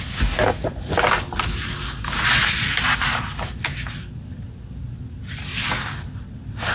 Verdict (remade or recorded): recorded